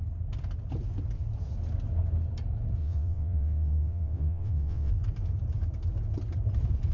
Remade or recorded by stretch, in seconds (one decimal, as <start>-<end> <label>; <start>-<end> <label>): 0.0-2.8 recorded; 2.8-4.9 remade; 4.9-6.9 recorded